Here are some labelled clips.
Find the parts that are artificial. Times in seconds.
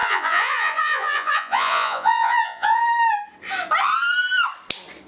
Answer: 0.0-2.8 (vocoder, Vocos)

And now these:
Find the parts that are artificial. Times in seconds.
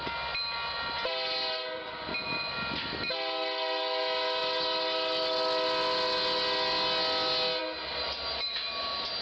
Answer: none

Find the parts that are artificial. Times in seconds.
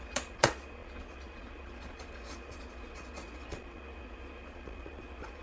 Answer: 0.0-5.4 (vocoder, Vocos)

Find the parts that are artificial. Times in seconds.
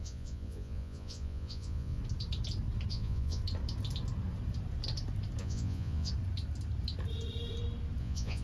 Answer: 0.0-2.0 (vocoder, Vocos); 2.9-3.4; 5.4-6.1; 8.0-8.4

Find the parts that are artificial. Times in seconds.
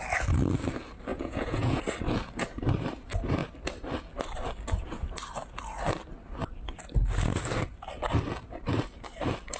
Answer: 1.1-1.8 (vocoder, Vocos)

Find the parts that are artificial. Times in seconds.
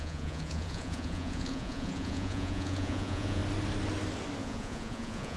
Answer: 0.0-3.4 (vocoder, Vocos); 4.4-5.4